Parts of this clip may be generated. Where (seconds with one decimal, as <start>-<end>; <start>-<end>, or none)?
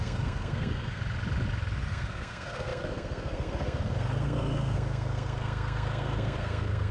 0.0-1.0; 1.9-6.9